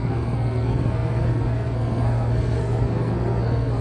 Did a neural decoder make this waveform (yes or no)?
yes